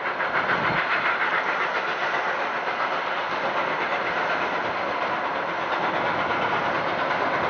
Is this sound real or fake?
real